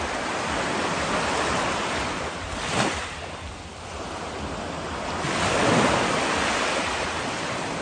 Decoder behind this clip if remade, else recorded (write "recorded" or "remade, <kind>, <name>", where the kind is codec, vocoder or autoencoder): recorded